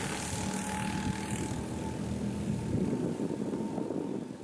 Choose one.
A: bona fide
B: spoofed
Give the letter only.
A